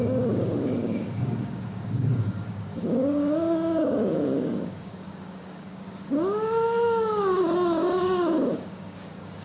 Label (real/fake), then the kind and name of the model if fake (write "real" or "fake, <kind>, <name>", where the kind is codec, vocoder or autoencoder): fake, codec, DAC